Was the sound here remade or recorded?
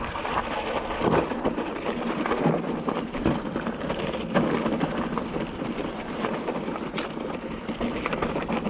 remade